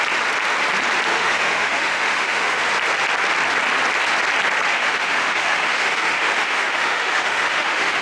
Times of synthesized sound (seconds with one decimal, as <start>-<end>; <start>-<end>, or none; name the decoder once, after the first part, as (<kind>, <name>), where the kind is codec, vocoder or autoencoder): 1.1-2.6 (autoencoder, DAC-VAE); 4.7-8.0